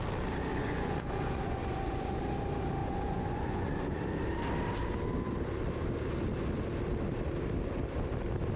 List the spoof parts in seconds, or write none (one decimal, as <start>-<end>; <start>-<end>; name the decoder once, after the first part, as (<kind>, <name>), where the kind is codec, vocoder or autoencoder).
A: 0.5-2.2 (vocoder, Vocos); 2.8-4.0